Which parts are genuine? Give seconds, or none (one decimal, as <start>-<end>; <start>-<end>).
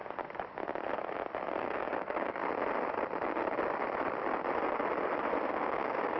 0.0-1.6; 2.4-5.4